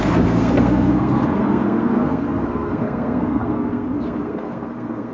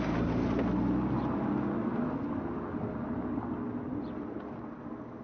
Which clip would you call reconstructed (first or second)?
first